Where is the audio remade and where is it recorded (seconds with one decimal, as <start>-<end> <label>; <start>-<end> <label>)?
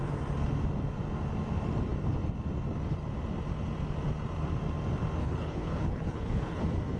0.0-5.2 recorded; 5.2-6.6 remade; 6.6-7.0 recorded